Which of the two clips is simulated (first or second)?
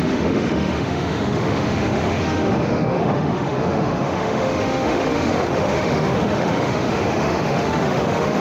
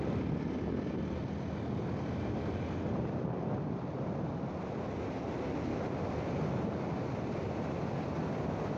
first